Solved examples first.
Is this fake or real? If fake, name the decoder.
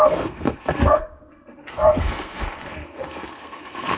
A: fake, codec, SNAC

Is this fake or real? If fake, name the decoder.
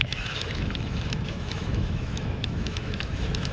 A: fake, autoencoder, DAC-VAE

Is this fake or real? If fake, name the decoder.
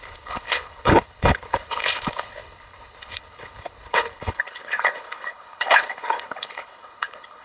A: fake, codec, HILCodec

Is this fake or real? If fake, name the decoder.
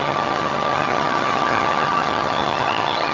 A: fake, vocoder, HiFi-GAN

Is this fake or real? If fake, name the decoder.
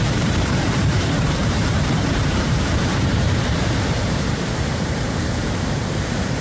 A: fake, vocoder, BigVGAN v2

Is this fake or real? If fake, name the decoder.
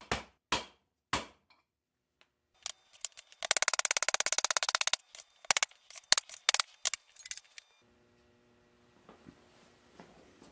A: real